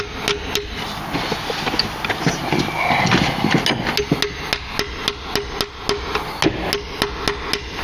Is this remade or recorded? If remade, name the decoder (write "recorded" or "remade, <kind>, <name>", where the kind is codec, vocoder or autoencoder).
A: recorded